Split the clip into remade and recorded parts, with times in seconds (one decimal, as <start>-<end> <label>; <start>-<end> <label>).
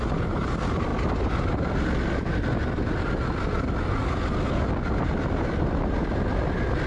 0.0-6.9 recorded